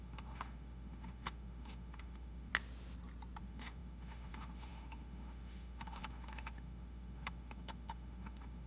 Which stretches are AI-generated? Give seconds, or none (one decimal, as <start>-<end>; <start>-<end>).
0.0-2.5; 3.4-8.7